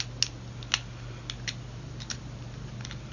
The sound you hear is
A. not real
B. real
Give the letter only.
B